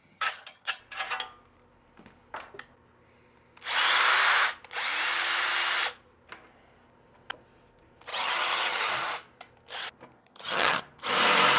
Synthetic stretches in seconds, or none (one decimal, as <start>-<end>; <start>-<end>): 0.0-0.8; 8.1-8.9; 10.2-10.8